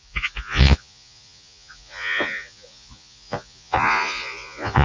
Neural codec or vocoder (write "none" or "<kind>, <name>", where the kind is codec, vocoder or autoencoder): vocoder, Vocos